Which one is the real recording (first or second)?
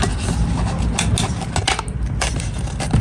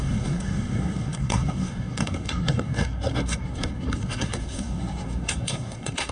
first